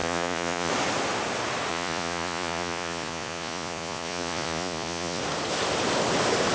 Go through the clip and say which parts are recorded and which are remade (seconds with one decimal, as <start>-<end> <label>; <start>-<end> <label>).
0.0-0.7 remade; 0.7-1.7 recorded; 1.7-5.2 remade; 5.2-6.5 recorded